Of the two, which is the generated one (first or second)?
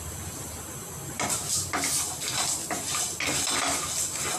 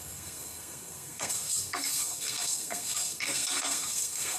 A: second